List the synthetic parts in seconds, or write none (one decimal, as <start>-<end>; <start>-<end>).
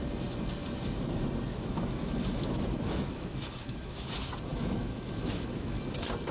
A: 1.5-4.1; 4.5-5.8